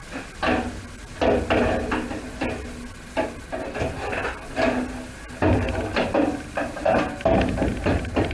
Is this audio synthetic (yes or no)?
no